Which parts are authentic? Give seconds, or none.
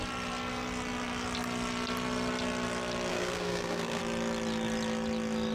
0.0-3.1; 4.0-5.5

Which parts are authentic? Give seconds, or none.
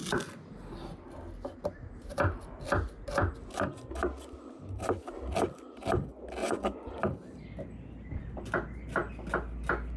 0.0-6.4; 7.0-10.0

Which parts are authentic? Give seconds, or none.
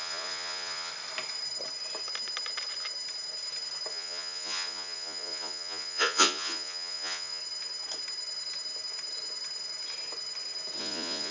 0.9-3.9; 7.4-10.8